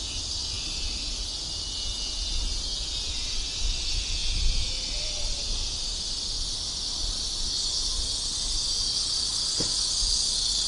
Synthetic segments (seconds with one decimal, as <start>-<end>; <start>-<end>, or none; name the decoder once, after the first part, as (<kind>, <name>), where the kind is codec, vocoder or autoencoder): 4.2-5.4 (vocoder, BigVGAN v2); 7.0-8.7